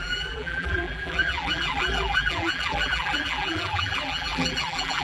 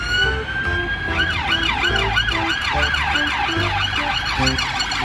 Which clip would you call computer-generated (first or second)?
first